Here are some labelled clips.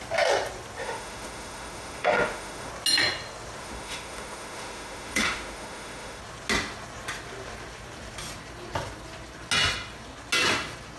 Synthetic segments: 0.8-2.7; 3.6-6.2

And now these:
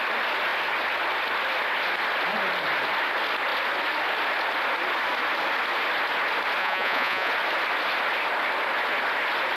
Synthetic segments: 6.6-7.3

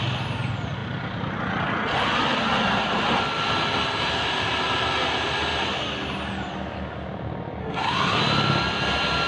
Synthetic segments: 7.6-8.2

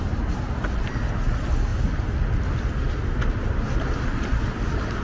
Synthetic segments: none

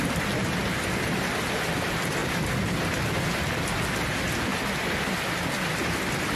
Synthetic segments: none

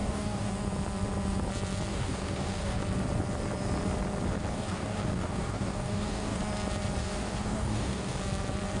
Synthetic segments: 0.0-0.5; 1.9-2.8; 4.5-6.4; 7.0-8.2